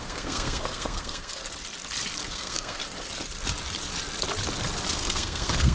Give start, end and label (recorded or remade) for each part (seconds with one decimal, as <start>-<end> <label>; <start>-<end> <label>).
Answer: 0.0-1.4 remade; 1.4-2.3 recorded; 2.3-2.8 remade; 2.8-4.9 recorded; 4.9-5.7 remade